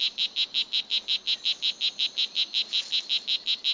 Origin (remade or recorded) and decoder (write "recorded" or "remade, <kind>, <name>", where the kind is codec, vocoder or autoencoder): recorded